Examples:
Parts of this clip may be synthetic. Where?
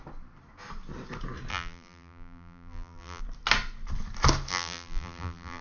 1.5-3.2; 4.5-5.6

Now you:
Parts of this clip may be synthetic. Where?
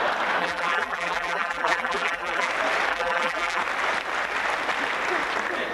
0.4-2.5; 2.9-3.6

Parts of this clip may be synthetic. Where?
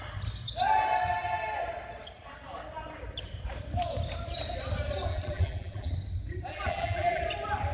5.1-5.9; 6.5-7.2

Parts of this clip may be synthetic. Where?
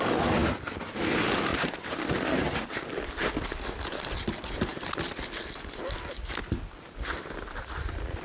1.5-3.1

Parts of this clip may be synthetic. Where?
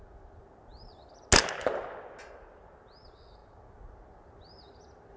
0.7-1.2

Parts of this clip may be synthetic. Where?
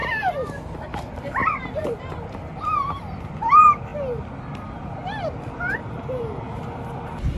0.8-1.4; 3.2-3.9; 4.5-7.4